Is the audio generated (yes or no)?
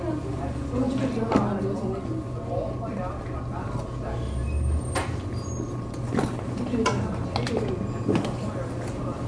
no